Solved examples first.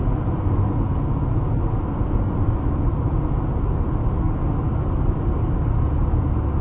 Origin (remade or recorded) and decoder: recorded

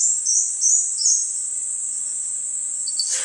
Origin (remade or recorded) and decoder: recorded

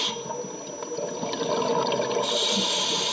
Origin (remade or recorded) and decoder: recorded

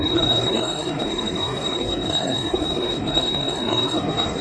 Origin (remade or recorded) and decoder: remade, codec, SNAC